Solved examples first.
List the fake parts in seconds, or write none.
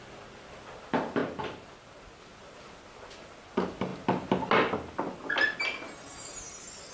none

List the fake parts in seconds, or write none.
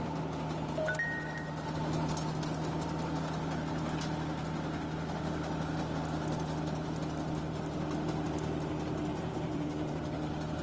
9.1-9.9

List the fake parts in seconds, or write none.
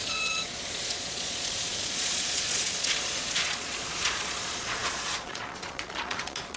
0.0-6.6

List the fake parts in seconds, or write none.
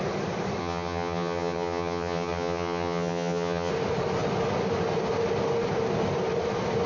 0.6-3.7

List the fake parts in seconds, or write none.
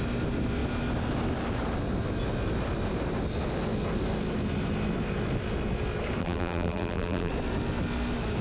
6.2-7.3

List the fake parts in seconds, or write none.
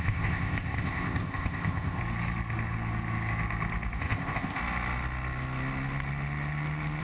0.0-2.0; 4.0-4.6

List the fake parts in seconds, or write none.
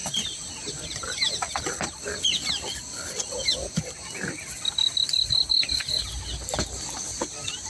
none